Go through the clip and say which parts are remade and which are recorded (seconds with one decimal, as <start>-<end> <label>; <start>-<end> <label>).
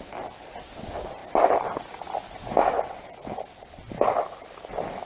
0.0-5.1 recorded